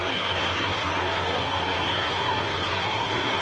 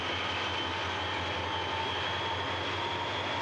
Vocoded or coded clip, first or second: first